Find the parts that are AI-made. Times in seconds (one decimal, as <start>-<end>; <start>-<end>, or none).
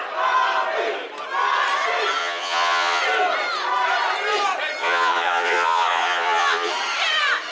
2.2-3.0; 4.8-6.7